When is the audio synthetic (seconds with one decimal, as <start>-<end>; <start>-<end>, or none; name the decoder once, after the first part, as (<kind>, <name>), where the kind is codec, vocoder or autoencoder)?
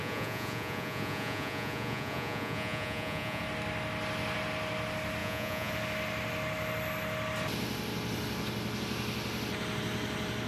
0.0-3.4 (vocoder, Vocos); 5.2-5.7